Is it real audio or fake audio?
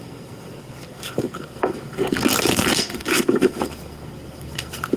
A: fake